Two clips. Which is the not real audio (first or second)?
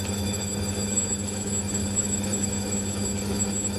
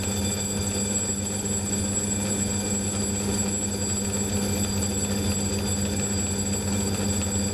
first